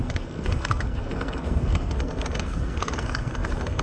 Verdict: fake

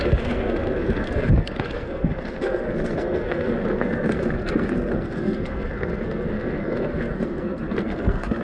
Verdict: fake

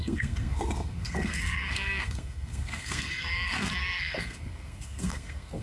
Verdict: fake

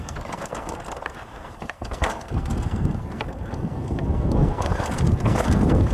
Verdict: fake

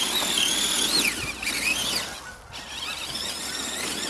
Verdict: real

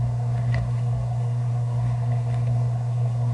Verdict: fake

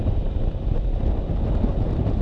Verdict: real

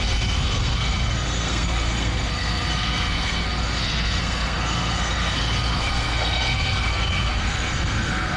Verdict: fake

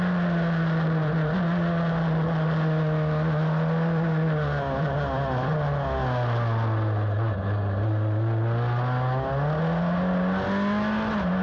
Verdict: real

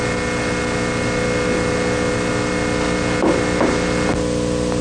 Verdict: real